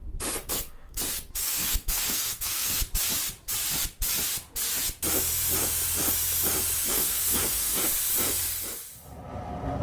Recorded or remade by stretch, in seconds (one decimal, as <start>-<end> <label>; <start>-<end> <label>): 0.0-0.5 recorded; 0.5-1.0 remade; 1.0-1.4 recorded; 1.4-2.8 remade; 2.8-6.9 recorded; 6.9-7.8 remade; 7.8-9.8 recorded